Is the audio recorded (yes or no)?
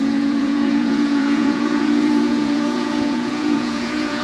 no